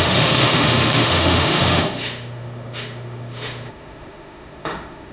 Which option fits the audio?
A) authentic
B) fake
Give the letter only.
B